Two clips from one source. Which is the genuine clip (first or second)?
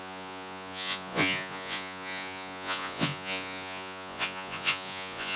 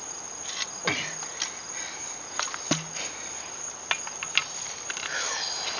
second